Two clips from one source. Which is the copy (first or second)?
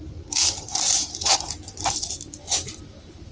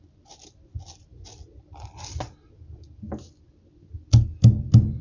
first